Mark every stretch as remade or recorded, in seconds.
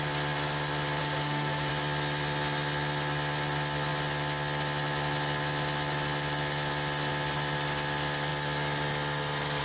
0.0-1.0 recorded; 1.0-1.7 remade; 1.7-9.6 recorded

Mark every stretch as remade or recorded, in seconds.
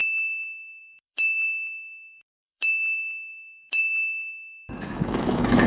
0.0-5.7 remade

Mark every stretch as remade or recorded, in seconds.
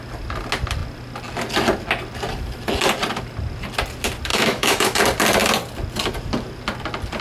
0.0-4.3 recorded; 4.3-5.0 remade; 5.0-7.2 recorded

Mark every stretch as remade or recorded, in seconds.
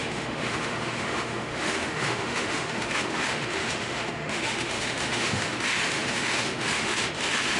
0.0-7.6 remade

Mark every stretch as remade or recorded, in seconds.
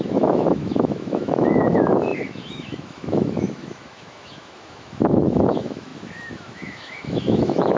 0.0-7.8 remade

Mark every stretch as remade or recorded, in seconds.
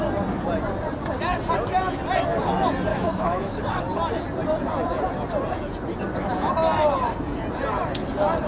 0.0-2.9 recorded; 2.9-3.6 remade; 3.6-8.5 recorded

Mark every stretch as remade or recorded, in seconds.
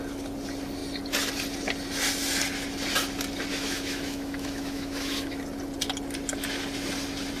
0.0-3.5 recorded; 3.5-5.4 remade; 5.4-7.4 recorded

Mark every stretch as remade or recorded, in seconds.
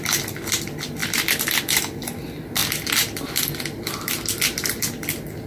0.0-5.5 recorded